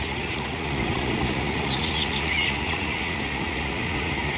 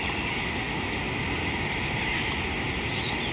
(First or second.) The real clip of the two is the second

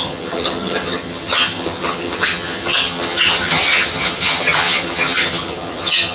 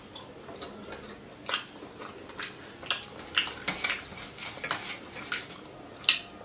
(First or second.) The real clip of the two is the second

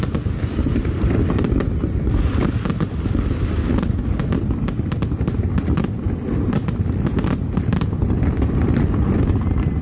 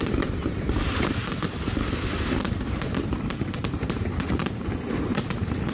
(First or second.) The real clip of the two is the first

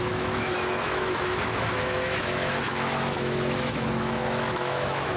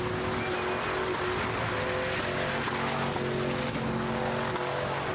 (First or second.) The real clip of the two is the second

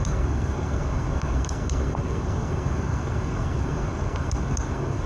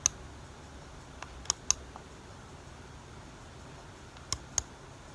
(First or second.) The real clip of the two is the second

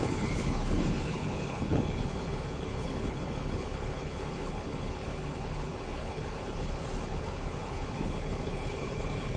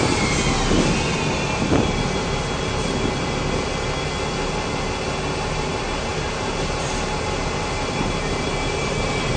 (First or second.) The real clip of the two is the second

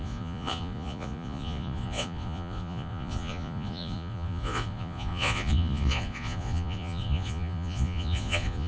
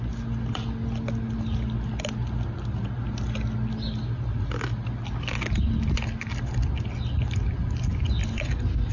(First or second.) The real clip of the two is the second